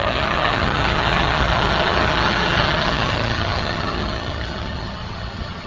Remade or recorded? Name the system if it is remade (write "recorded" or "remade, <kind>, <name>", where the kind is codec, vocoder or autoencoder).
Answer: remade, vocoder, HiFi-GAN